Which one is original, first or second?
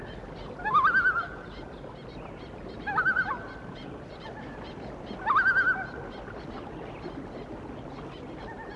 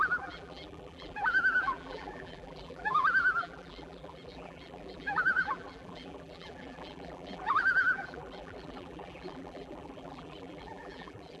first